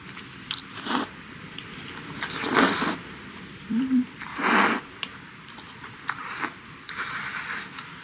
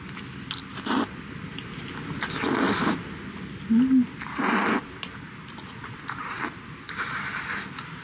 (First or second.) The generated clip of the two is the first